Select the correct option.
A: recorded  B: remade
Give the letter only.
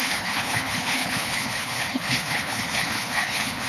B